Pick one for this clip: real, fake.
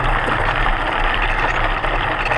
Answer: real